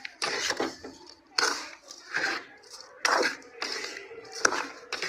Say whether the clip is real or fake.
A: fake